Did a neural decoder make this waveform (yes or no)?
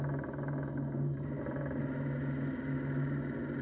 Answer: no